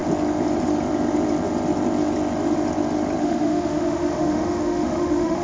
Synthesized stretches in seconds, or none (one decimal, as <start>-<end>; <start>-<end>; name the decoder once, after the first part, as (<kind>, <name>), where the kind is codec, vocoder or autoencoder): 3.2-5.4 (autoencoder, DAC-VAE)